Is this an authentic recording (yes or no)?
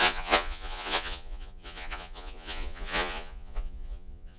no